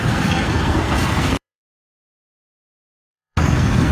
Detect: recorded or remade remade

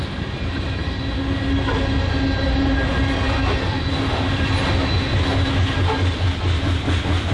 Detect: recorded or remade recorded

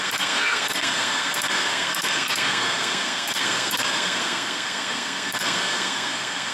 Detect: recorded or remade remade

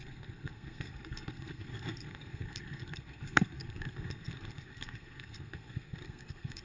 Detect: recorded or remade remade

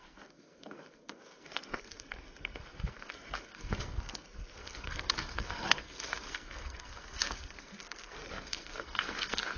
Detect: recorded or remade remade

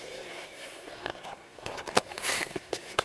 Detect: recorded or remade remade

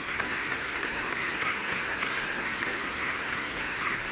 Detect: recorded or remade remade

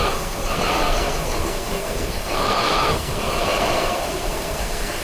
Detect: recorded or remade remade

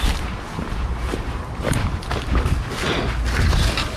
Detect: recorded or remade recorded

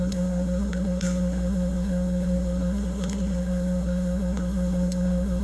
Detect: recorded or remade remade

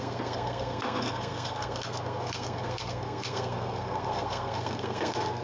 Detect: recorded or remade remade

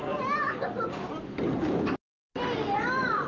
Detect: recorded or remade recorded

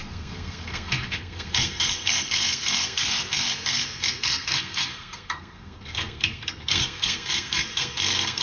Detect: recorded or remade remade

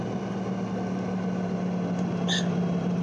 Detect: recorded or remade recorded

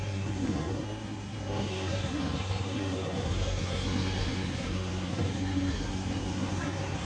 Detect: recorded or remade remade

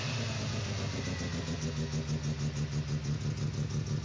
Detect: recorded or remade recorded